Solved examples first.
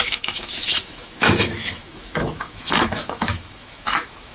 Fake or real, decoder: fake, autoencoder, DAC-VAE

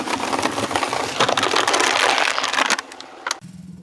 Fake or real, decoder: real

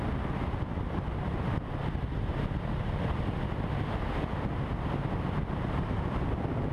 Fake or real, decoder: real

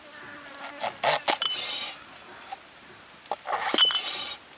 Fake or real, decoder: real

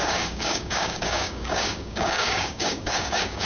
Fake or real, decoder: fake, codec, DAC